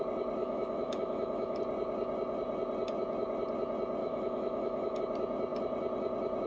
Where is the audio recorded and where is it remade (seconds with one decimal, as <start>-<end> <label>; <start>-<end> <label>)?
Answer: 0.0-0.4 recorded; 0.4-1.6 remade; 1.6-4.0 recorded; 4.0-5.0 remade; 5.0-6.5 recorded

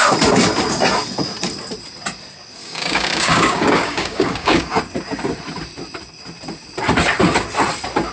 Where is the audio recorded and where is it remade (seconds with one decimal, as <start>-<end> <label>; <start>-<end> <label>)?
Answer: 0.0-2.6 recorded; 2.6-4.8 remade; 4.8-8.1 recorded

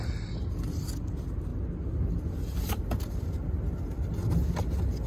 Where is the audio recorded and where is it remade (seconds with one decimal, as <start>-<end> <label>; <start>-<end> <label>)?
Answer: 0.0-5.1 recorded

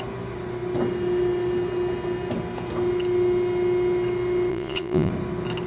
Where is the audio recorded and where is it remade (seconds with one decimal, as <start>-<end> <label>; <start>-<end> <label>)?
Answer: 0.0-4.5 recorded; 4.5-5.1 remade; 5.1-5.7 recorded